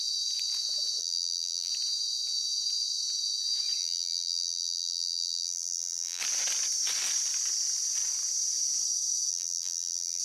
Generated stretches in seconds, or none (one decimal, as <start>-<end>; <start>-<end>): 1.0-1.7; 3.8-6.2; 9.3-10.2